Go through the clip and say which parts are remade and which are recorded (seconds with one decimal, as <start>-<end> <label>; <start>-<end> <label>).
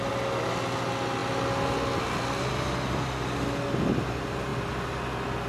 0.0-5.5 recorded